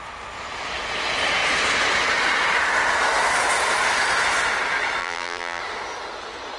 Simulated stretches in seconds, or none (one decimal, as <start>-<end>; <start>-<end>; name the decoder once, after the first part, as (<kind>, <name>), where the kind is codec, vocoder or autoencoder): 5.0-5.6 (vocoder, BigVGAN v2)

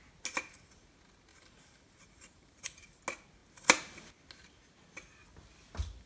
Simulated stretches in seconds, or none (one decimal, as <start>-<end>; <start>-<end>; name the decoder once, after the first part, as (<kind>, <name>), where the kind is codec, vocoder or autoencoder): 1.3-3.0 (vocoder, BigVGAN v2)

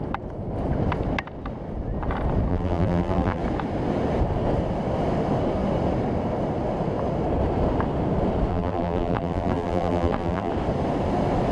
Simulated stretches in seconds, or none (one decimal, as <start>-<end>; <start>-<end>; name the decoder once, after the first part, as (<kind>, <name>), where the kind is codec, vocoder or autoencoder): 2.5-3.4 (vocoder, BigVGAN v2); 8.5-10.5